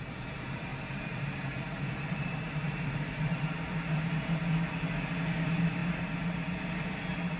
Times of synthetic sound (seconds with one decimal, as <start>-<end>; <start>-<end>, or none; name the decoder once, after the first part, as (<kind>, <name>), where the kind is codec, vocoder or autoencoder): 0.7-3.4 (vocoder, BigVGAN v2)